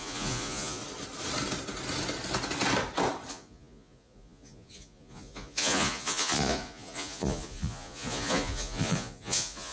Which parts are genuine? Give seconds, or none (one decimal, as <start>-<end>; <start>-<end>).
0.8-3.3

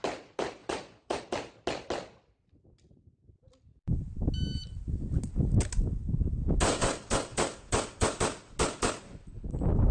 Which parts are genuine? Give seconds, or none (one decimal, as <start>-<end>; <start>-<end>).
0.0-0.6; 1.2-9.9

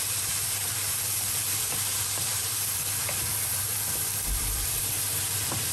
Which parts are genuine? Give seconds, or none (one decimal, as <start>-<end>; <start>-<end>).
none

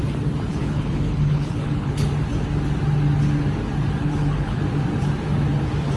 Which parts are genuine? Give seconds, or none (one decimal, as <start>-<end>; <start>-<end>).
0.0-0.5; 2.1-4.0; 4.6-6.0